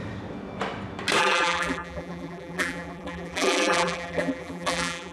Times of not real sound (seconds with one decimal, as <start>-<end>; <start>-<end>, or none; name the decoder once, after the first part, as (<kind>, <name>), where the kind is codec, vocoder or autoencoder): 1.2-5.1 (vocoder, BigVGAN v2)